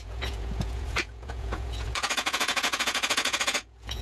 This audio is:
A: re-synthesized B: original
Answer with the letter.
A